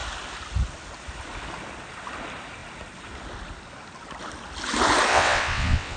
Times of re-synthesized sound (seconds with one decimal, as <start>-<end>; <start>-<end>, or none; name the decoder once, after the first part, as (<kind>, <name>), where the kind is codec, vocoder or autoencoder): 5.1-6.0 (vocoder, WaveNeXt)